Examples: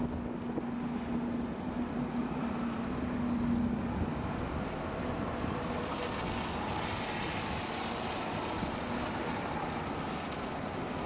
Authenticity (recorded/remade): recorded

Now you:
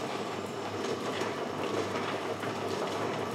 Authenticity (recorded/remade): remade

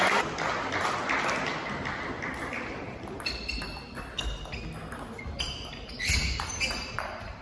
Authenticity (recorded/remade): recorded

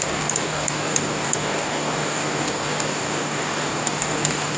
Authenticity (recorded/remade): remade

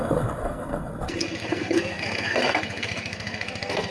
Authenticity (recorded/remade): remade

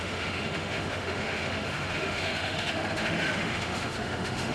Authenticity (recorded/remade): remade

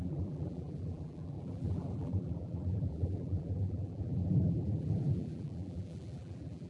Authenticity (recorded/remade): remade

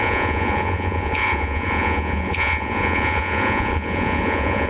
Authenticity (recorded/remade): remade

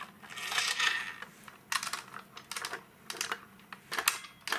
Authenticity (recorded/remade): recorded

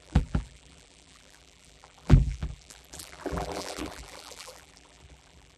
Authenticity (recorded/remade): remade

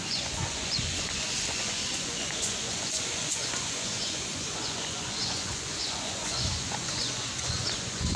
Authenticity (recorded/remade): remade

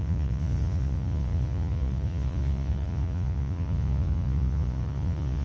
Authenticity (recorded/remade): remade